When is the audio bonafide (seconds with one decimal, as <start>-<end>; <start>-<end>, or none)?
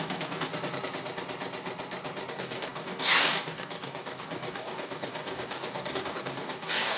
0.5-2.3